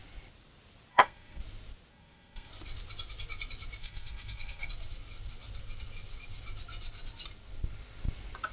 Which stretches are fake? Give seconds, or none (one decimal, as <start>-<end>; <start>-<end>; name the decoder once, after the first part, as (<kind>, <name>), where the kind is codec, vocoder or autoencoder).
0.9-1.4 (codec, SNAC); 1.9-2.5; 3.8-4.7